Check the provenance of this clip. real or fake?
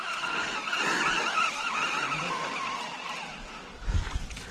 real